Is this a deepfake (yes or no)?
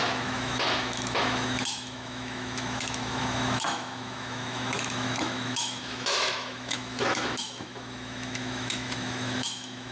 yes